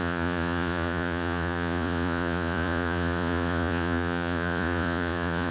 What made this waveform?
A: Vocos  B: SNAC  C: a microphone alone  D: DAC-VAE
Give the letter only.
A